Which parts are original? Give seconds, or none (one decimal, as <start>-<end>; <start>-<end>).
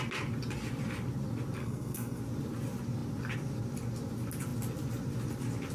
0.0-1.6; 2.2-5.7